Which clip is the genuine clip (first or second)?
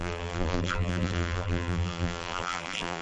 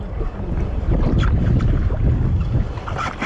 second